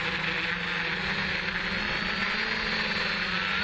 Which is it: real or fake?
real